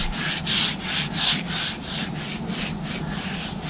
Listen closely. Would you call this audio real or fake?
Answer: real